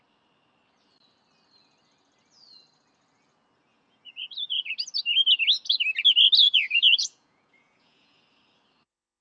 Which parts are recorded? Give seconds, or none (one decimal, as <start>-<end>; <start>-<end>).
0.0-3.7; 4.7-6.4; 8.2-9.2

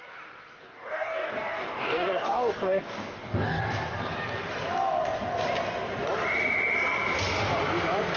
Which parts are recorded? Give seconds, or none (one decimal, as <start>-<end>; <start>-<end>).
0.0-0.6; 3.6-8.2

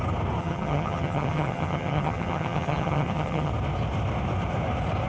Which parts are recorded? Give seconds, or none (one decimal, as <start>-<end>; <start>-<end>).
0.0-0.4; 3.5-5.1